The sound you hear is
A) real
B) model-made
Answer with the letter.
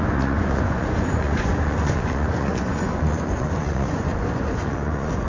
B